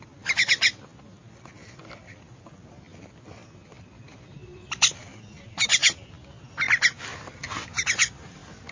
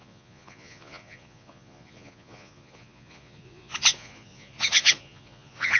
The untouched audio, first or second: first